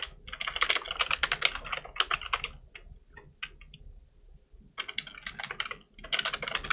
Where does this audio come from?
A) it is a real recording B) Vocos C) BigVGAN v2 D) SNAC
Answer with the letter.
A